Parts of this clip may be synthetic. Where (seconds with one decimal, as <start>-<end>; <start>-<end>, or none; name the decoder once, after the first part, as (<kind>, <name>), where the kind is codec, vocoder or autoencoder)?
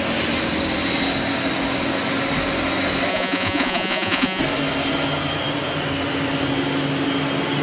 3.1-4.4 (vocoder, Vocos)